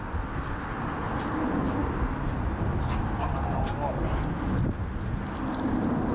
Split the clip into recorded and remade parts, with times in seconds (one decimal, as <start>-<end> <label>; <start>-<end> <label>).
0.0-6.1 recorded